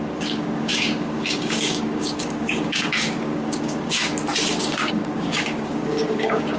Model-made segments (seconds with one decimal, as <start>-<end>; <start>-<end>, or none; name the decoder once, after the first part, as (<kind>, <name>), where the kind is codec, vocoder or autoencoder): 0.0-4.1 (codec, DAC); 4.6-6.6